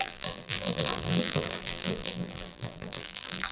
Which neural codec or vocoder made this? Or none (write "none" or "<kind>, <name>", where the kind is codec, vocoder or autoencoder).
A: vocoder, BigVGAN v2